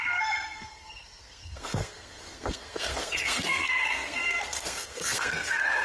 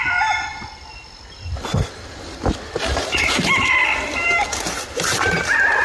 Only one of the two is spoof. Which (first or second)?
first